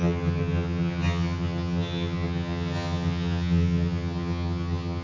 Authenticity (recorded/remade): remade